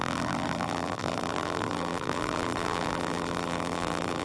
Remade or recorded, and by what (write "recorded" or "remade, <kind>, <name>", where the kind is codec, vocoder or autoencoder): remade, vocoder, BigVGAN v2